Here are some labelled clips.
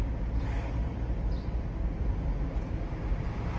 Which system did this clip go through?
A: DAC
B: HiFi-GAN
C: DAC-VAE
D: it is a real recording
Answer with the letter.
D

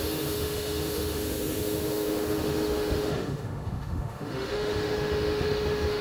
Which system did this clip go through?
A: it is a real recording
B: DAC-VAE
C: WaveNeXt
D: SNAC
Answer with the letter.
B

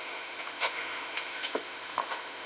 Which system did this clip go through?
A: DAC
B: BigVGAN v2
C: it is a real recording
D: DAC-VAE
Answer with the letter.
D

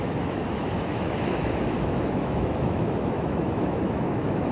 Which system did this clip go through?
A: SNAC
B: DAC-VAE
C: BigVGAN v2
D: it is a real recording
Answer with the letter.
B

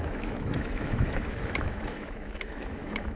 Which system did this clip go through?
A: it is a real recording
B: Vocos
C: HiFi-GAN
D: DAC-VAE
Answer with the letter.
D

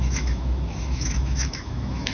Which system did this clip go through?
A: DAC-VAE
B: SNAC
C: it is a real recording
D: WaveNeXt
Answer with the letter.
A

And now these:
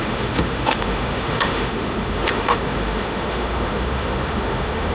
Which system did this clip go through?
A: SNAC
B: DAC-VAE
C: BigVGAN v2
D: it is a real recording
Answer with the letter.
B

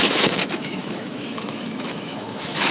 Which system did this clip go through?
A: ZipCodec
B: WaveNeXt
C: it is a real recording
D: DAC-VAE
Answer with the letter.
D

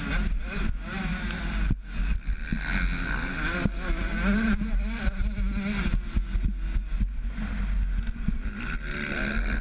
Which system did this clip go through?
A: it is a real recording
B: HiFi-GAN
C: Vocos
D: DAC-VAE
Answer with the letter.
A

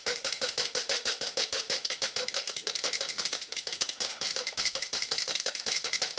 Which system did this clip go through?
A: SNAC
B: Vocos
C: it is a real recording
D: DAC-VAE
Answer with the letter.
D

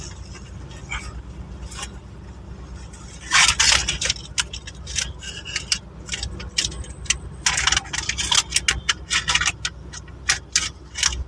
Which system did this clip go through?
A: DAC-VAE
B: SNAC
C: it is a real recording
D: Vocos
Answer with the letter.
C